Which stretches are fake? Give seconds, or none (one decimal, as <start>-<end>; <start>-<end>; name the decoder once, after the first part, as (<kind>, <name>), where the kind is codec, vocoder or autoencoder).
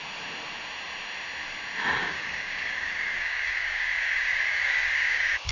2.0-5.5 (codec, DAC)